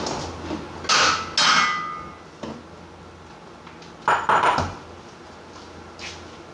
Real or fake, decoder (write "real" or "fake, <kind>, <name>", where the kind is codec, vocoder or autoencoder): real